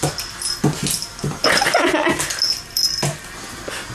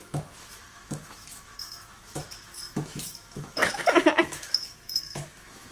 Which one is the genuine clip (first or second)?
first